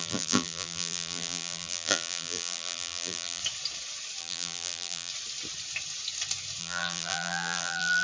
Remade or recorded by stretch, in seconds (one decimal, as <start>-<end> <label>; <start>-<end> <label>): 0.0-3.4 remade; 3.4-4.2 recorded; 4.2-5.1 remade; 5.1-6.6 recorded; 6.6-8.0 remade